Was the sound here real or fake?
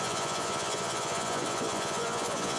fake